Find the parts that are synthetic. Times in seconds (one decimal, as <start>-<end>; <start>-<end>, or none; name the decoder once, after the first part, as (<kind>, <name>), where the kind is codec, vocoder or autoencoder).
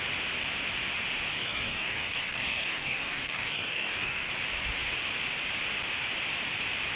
1.3-4.3 (codec, DAC)